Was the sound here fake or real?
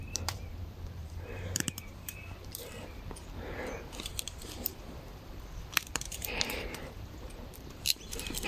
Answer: fake